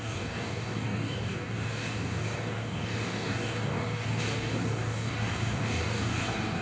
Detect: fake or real fake